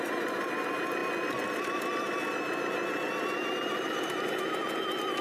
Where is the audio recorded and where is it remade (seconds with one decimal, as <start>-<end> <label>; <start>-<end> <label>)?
0.0-5.2 recorded